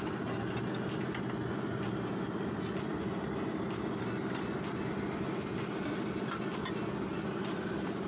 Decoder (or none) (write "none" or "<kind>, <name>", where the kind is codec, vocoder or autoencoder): none